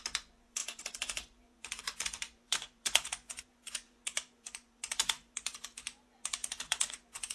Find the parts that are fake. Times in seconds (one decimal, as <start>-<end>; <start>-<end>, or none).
0.0-7.3